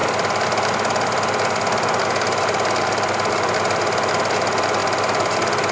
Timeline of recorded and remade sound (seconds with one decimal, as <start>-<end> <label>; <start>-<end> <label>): 0.0-5.7 recorded